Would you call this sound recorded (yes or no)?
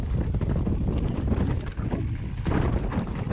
yes